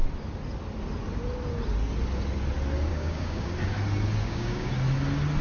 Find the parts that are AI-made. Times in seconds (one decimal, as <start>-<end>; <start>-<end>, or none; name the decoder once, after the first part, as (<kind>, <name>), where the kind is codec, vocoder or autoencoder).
2.9-3.5 (codec, DAC); 4.2-4.7